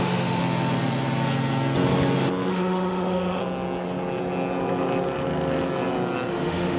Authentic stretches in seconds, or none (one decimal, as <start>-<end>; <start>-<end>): 0.4-2.5; 3.4-6.3